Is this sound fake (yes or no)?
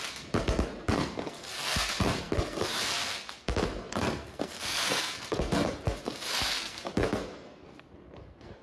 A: yes